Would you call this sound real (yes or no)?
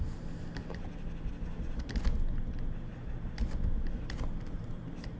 yes